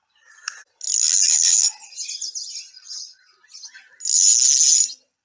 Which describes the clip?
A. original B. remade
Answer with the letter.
A